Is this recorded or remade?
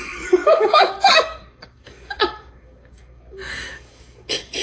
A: remade